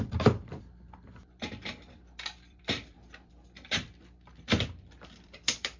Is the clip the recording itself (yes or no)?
no